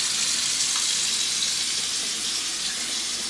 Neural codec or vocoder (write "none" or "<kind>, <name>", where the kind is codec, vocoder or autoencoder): none